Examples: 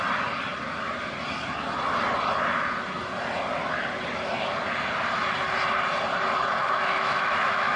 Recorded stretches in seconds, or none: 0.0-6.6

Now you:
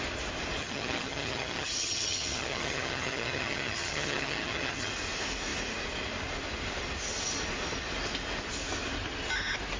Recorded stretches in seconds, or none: 0.0-0.6; 4.9-9.8

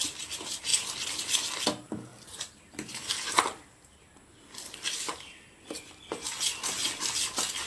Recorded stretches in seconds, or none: 0.0-2.1; 5.8-7.7

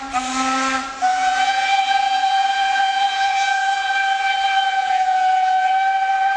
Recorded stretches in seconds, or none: 0.0-1.1; 3.9-4.7; 5.7-6.4

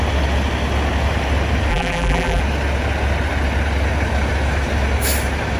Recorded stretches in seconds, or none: 0.0-1.7; 2.4-5.6